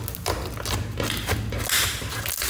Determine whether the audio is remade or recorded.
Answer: recorded